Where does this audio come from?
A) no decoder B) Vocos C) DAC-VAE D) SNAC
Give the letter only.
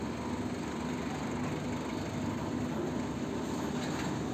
A